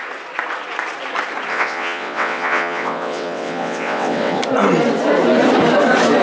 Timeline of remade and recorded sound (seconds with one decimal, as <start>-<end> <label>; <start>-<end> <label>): 0.0-1.5 recorded; 1.5-4.4 remade; 4.4-6.2 recorded